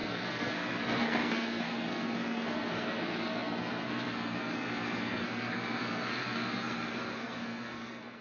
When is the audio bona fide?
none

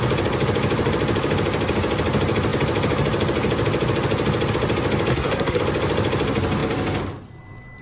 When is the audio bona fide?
0.0-5.1; 5.6-7.8

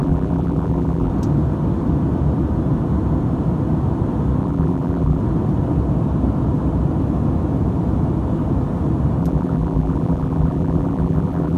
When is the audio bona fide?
1.1-4.4; 5.2-9.2

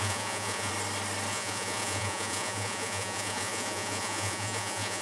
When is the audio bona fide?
0.7-1.3

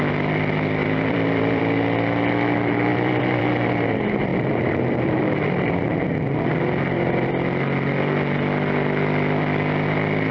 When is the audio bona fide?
0.0-0.8; 1.6-2.9; 3.4-4.3; 7.3-10.3

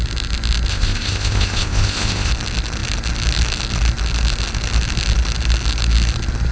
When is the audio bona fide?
0.0-0.7; 2.3-6.5

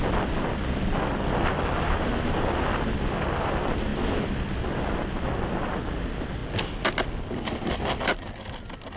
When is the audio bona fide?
0.0-9.0